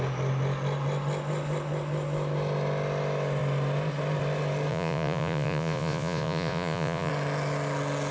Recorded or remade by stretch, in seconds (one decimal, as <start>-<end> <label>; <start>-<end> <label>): 0.0-4.7 recorded; 4.7-7.1 remade; 7.1-8.1 recorded